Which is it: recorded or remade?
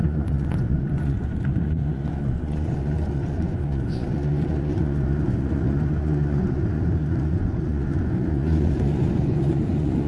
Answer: remade